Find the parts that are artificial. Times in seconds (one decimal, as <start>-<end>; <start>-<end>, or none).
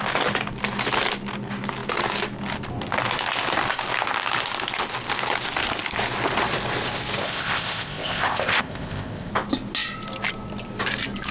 7.2-9.3